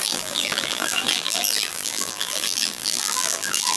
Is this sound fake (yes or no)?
yes